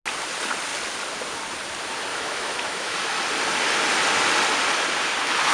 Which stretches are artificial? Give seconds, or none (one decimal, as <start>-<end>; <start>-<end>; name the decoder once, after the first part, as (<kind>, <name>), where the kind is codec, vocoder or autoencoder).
2.1-3.2 (autoencoder, DAC-VAE)